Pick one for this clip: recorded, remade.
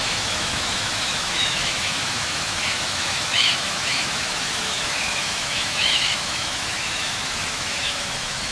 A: remade